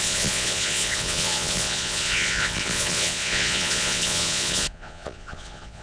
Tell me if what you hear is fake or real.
fake